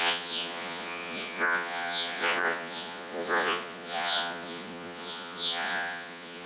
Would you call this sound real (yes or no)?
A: no